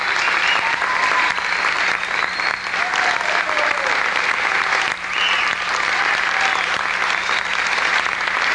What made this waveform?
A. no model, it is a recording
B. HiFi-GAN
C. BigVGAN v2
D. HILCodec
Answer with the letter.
A